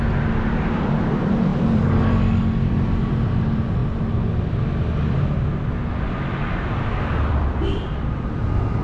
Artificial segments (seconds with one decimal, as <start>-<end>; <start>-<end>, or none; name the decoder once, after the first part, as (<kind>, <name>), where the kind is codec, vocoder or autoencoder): 0.0-3.8 (vocoder, BigVGAN v2); 7.3-8.8